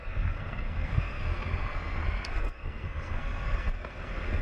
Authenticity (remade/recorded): remade